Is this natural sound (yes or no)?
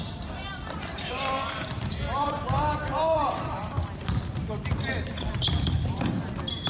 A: no